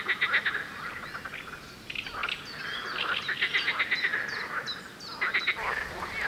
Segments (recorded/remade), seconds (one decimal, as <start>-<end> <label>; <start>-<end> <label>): 0.0-6.3 recorded